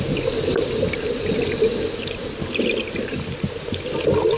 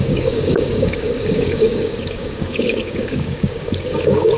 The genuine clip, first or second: first